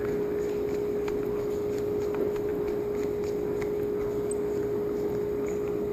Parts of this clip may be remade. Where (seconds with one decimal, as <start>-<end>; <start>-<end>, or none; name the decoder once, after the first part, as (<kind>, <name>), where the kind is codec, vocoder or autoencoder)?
none